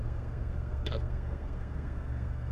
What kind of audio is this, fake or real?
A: fake